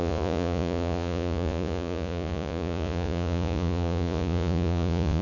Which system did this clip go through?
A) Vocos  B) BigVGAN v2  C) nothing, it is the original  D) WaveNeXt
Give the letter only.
A